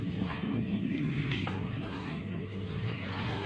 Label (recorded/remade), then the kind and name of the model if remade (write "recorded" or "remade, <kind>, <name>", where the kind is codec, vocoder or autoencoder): remade, codec, SNAC